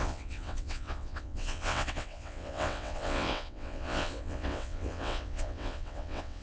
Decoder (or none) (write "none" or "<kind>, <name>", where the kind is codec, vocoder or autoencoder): vocoder, WaveNeXt